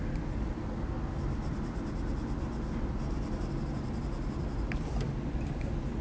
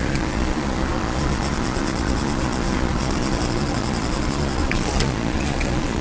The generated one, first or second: second